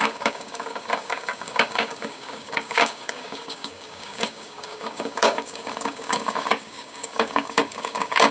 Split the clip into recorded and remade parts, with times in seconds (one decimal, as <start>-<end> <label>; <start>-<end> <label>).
0.0-8.3 remade